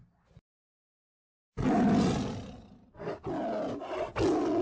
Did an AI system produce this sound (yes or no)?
no